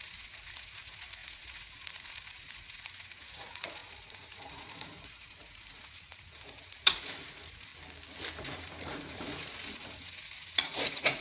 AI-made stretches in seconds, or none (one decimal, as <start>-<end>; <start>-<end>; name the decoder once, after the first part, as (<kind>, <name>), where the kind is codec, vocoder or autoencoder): 0.0-7.7 (vocoder, Vocos); 8.4-11.2